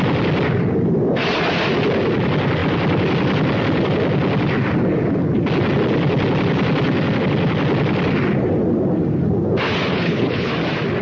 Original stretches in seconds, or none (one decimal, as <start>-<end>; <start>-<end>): 0.0-9.9; 10.5-11.0